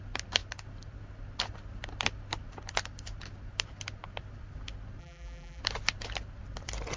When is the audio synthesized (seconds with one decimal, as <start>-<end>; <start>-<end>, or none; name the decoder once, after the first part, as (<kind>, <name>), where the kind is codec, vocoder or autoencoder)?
5.0-5.6 (vocoder, BigVGAN v2)